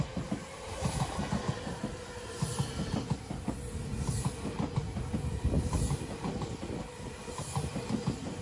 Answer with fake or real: real